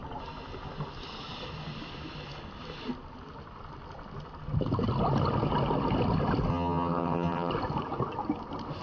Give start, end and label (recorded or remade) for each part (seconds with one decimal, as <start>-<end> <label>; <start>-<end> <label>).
0.0-6.5 recorded; 6.5-7.5 remade; 7.5-8.8 recorded